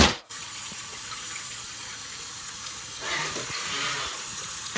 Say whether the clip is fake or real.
fake